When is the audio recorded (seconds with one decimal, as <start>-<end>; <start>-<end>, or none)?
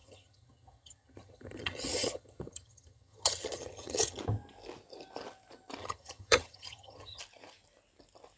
4.2-5.8; 7.2-8.4